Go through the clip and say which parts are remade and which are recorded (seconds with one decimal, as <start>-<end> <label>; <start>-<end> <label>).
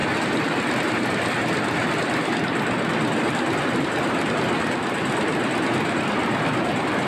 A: 0.0-7.1 recorded